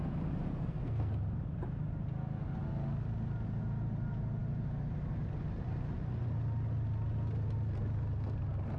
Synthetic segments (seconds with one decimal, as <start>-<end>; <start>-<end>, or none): 0.5-1.1